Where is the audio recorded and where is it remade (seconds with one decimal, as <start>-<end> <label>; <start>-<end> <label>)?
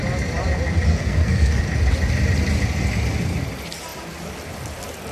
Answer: 0.0-0.9 recorded; 0.9-1.6 remade; 1.6-5.1 recorded